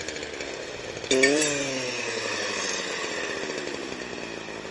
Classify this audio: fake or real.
real